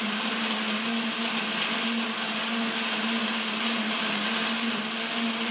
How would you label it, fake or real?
real